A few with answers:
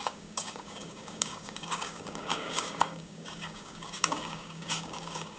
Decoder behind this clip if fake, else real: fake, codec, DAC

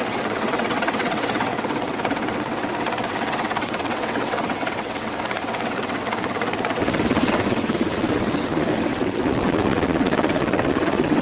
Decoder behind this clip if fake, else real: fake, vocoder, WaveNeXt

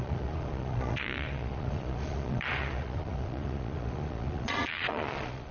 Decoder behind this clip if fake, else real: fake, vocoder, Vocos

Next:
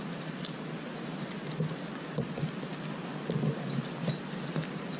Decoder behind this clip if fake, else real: real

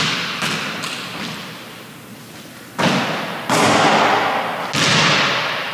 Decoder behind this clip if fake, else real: real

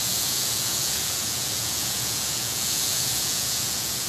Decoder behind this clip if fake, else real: fake, vocoder, Vocos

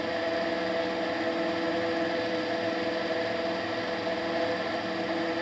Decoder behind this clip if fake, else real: real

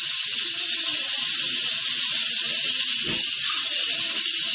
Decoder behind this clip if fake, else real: real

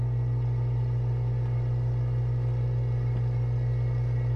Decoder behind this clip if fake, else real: real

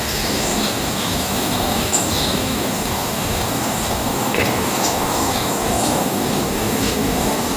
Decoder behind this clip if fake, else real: fake, codec, DAC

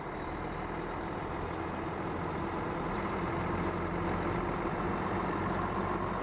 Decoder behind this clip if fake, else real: real